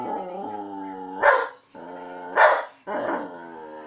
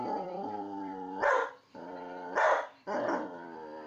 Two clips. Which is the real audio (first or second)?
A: first